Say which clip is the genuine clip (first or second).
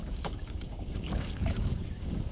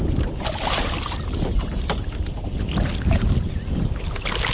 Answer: second